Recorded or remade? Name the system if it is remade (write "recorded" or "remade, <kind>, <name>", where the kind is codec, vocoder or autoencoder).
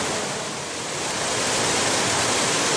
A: recorded